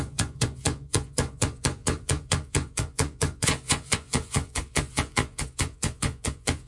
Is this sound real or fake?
fake